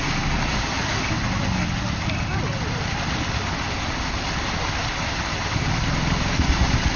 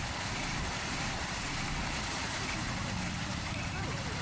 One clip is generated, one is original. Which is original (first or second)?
first